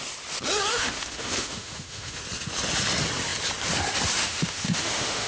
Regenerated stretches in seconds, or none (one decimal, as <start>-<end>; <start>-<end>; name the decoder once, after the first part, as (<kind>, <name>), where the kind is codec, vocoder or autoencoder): 0.7-2.2 (autoencoder, DAC-VAE); 4.2-5.3